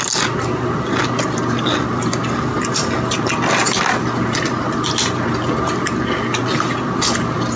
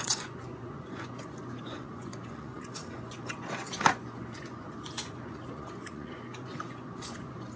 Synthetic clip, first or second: second